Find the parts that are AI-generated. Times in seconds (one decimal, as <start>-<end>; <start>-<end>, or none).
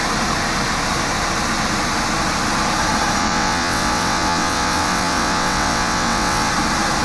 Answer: 3.2-6.5